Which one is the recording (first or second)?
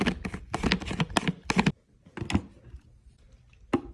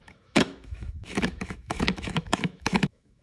first